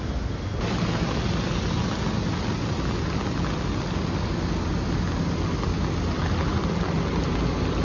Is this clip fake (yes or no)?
no